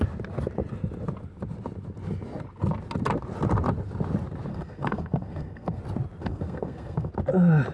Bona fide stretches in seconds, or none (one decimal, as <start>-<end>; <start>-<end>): 0.0-4.5; 5.8-6.2; 7.1-7.7

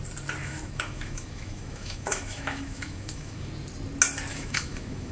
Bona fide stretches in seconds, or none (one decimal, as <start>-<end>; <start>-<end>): 0.0-0.4; 3.5-4.3

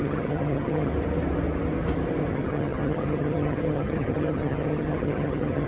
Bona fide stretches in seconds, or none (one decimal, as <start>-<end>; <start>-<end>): 0.9-2.3